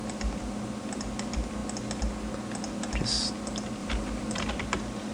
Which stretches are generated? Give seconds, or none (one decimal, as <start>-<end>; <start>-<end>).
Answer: 0.0-0.6; 3.8-4.5